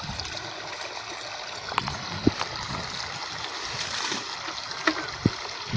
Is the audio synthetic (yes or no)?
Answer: no